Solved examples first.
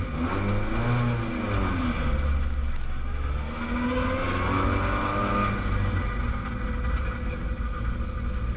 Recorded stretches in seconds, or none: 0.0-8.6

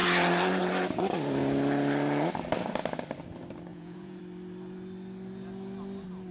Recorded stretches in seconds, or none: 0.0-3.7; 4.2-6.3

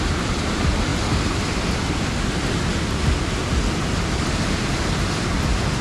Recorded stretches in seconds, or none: 0.0-5.8

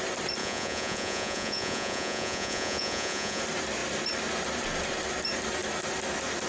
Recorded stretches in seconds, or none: 0.0-0.4; 3.4-6.5

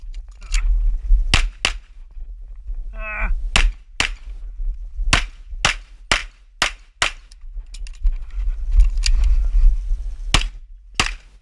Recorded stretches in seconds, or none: 0.0-11.4